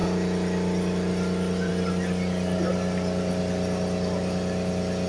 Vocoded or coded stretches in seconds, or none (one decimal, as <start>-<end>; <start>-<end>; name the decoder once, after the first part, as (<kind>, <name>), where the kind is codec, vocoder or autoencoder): none